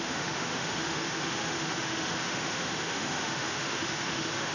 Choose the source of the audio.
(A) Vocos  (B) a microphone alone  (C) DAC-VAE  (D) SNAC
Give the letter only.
C